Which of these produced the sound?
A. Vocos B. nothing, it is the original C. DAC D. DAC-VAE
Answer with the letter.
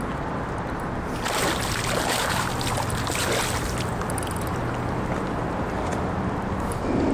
B